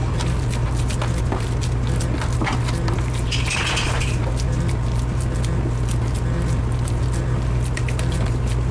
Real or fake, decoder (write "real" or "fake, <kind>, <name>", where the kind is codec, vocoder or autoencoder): real